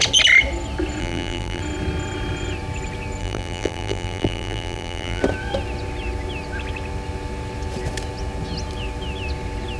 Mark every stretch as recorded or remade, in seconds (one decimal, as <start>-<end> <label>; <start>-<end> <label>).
0.0-1.0 recorded; 1.0-1.6 remade; 1.6-3.2 recorded; 3.2-5.2 remade; 5.2-9.8 recorded